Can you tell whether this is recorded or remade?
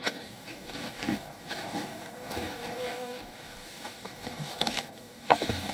remade